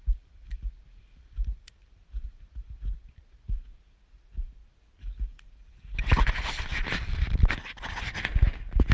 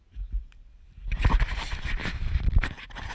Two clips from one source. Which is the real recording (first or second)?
first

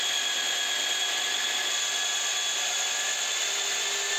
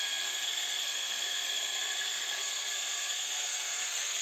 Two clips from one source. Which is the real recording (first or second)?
first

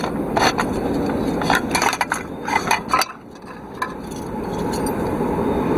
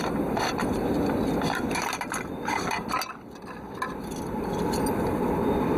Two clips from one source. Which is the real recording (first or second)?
first